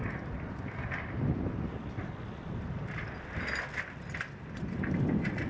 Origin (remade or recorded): recorded